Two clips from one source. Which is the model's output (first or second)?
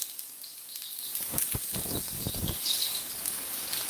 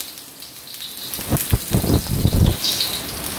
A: first